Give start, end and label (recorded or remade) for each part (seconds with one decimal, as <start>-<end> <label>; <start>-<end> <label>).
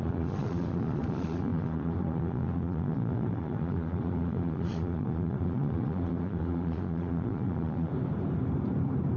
0.0-7.9 remade; 7.9-9.2 recorded